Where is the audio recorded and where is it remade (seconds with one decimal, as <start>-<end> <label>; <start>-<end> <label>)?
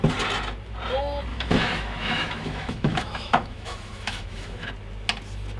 0.0-1.3 recorded; 1.3-4.7 remade; 4.7-5.6 recorded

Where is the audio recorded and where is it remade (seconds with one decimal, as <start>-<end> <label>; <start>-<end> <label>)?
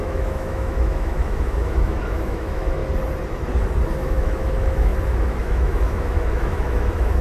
0.0-2.8 remade; 2.8-3.9 recorded; 3.9-7.2 remade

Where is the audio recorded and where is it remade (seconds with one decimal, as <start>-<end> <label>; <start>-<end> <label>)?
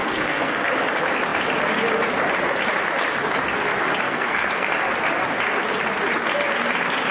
0.0-0.7 remade; 0.7-4.0 recorded; 4.0-4.7 remade; 4.7-7.1 recorded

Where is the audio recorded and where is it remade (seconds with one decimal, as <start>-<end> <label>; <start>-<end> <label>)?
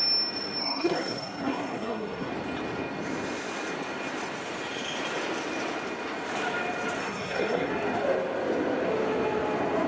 0.0-0.6 recorded; 0.6-2.3 remade; 2.3-7.0 recorded; 7.0-7.7 remade; 7.7-9.9 recorded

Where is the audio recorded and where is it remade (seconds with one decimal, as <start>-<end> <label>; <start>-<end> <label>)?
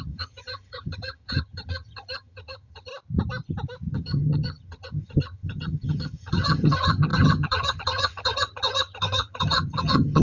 0.0-2.9 remade; 2.9-3.9 recorded; 3.9-10.2 remade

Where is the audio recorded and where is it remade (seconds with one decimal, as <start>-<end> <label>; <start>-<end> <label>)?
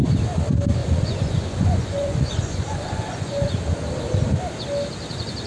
0.0-0.8 recorded; 0.8-3.5 remade; 3.5-5.5 recorded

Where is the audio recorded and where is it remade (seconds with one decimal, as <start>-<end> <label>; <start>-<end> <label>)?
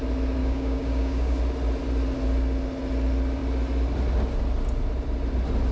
0.0-0.4 recorded; 0.4-1.4 remade; 1.4-5.7 recorded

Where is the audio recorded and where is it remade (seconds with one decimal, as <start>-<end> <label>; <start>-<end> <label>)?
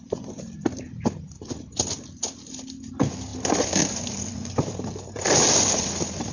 0.0-6.3 recorded